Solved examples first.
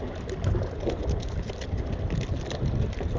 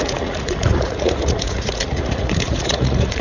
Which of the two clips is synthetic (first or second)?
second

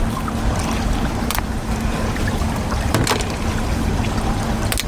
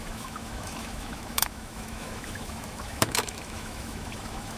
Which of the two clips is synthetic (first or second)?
second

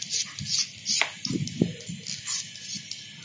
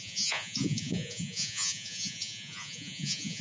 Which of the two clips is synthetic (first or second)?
second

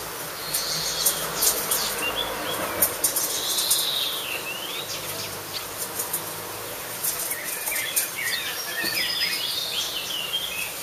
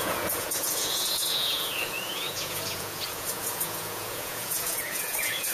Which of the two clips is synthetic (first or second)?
second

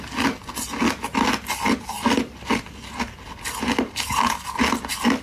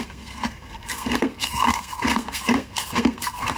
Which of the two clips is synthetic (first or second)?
second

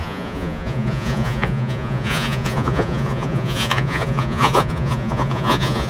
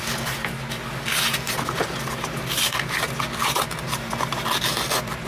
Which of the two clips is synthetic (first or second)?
first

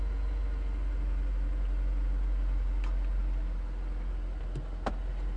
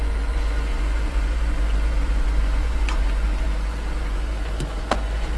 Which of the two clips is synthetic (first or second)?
second